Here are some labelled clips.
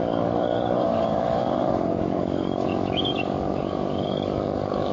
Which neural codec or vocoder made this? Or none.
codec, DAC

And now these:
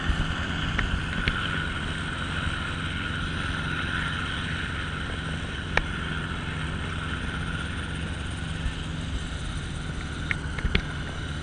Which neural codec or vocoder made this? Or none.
none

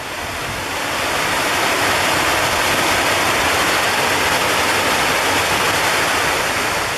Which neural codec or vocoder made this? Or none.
none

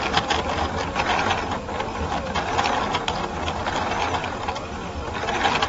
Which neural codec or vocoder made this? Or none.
none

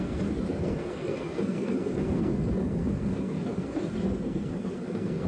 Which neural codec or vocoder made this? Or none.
codec, SNAC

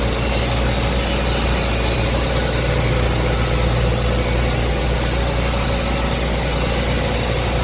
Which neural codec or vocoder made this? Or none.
none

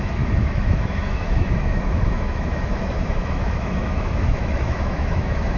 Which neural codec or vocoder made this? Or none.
autoencoder, DAC-VAE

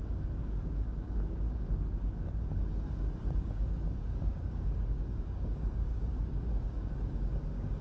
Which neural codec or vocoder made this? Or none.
codec, DAC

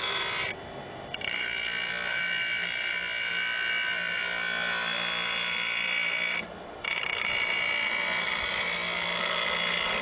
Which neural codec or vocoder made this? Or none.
none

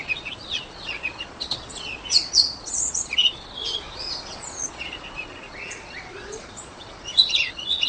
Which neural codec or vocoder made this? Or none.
vocoder, Vocos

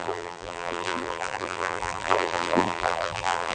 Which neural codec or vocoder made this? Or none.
vocoder, BigVGAN v2